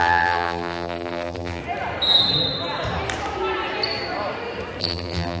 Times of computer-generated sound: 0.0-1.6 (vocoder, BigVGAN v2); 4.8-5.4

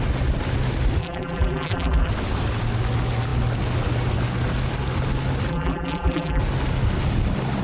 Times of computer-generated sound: 1.0-2.1 (vocoder, BigVGAN v2); 5.5-6.4